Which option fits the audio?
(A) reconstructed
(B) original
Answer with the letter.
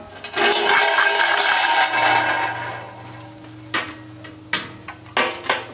B